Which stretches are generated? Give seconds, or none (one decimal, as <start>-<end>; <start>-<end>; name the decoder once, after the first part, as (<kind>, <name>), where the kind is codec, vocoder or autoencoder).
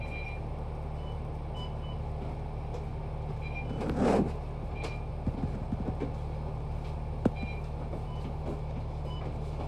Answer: none